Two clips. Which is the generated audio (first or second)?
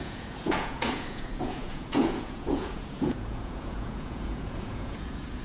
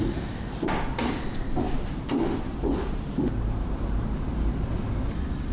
first